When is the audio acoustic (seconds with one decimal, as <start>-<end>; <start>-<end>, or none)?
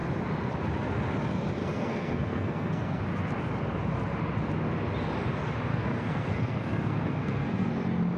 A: 0.0-1.6; 3.0-5.7; 7.7-8.2